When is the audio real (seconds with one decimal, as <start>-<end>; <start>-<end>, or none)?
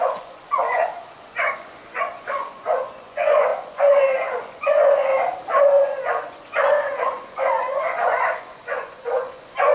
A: 5.1-5.6